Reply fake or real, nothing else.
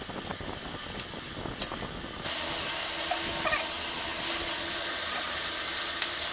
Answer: real